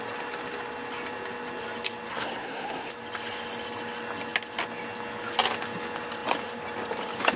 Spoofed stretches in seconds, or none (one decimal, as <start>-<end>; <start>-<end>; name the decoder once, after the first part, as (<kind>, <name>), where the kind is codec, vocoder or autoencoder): 2.1-2.9 (codec, SNAC)